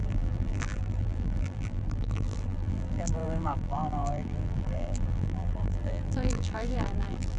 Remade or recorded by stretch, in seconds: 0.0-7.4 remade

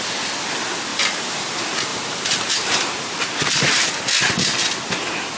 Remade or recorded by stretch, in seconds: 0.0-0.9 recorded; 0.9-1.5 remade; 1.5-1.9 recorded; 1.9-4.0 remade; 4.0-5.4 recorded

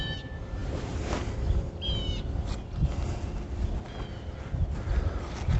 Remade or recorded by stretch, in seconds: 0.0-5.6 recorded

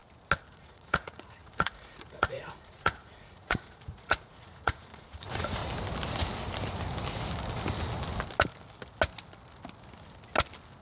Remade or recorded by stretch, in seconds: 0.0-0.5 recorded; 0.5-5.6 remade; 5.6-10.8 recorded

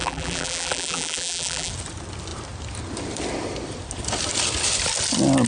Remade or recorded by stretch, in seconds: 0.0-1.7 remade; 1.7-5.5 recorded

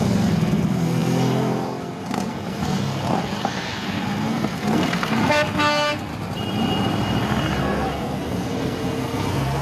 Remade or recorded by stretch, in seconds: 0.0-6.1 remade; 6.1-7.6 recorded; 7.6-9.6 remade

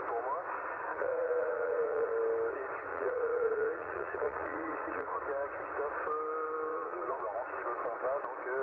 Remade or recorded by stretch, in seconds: 0.0-0.9 recorded; 0.9-2.1 remade; 2.1-2.9 recorded; 2.9-5.2 remade; 5.2-6.7 recorded; 6.7-7.2 remade; 7.2-8.6 recorded

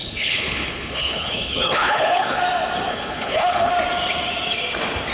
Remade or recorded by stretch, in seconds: 0.0-2.4 remade; 2.4-2.9 recorded; 2.9-3.7 remade; 3.7-5.1 recorded